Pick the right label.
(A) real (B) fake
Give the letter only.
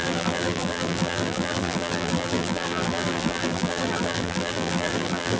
B